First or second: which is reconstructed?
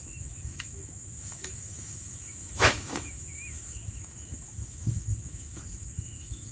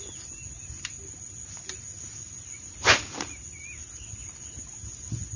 first